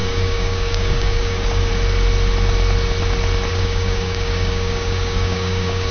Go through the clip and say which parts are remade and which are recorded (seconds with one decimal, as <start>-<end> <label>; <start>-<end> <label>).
0.0-1.7 remade; 1.7-3.5 recorded; 3.5-5.9 remade